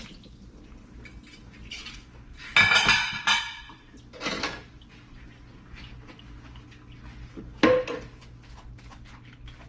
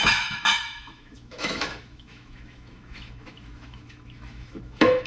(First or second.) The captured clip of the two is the first